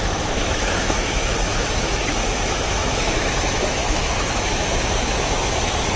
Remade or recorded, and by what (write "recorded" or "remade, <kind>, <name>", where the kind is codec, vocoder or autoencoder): remade, autoencoder, DAC-VAE